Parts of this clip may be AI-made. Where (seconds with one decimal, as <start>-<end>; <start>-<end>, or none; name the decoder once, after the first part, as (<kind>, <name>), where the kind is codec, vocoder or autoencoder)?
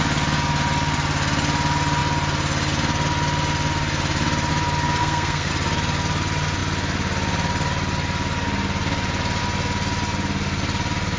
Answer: 5.0-5.5 (codec, SNAC)